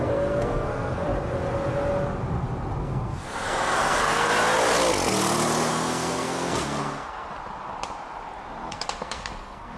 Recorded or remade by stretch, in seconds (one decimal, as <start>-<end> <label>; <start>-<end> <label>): 0.0-1.0 remade; 1.0-2.8 recorded; 2.8-4.3 remade; 4.3-5.7 recorded; 5.7-7.3 remade; 7.3-8.7 recorded; 8.7-9.8 remade